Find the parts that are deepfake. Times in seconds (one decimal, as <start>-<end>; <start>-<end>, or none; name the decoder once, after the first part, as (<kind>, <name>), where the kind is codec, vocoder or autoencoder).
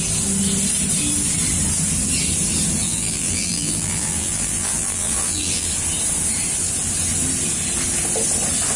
2.8-5.7 (vocoder, BigVGAN v2)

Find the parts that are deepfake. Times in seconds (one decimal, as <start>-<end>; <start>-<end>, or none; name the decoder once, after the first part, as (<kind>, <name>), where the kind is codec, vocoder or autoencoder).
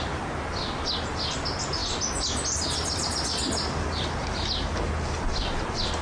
none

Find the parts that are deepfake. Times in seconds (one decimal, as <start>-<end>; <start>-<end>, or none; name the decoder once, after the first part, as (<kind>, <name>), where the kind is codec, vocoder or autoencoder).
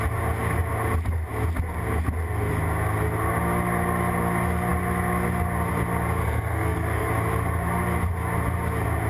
6.2-7.1 (codec, SNAC)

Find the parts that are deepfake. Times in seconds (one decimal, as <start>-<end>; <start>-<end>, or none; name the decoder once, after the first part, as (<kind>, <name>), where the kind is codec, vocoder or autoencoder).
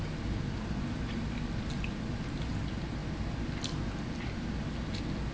none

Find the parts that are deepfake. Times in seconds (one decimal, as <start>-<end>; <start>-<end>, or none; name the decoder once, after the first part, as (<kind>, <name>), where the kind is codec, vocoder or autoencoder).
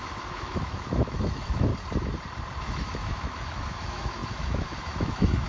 0.0-1.7 (autoencoder, DAC-VAE); 2.6-5.5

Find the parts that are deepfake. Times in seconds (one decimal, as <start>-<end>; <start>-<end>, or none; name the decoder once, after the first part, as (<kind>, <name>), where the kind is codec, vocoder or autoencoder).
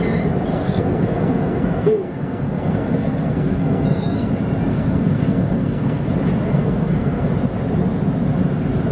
0.5-4.3 (codec, SNAC); 4.7-6.1; 6.5-7.3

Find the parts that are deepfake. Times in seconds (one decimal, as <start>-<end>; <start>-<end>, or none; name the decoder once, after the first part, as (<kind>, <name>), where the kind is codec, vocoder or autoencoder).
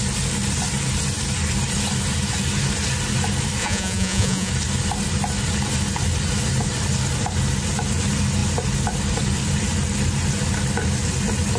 3.6-4.5 (vocoder, Vocos)